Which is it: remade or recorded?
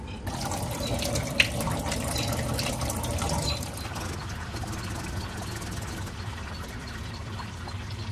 recorded